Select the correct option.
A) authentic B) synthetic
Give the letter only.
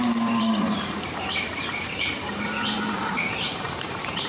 B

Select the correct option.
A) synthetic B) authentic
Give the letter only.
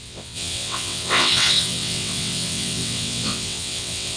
A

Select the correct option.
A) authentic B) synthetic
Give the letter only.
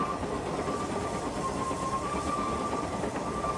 A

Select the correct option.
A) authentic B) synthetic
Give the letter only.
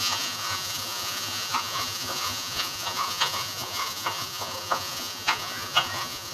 B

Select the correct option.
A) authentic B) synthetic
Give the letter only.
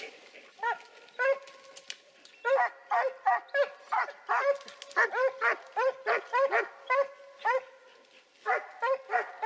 A